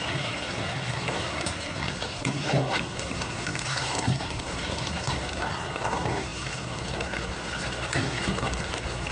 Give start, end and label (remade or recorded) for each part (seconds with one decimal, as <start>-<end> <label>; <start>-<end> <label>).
0.0-9.1 remade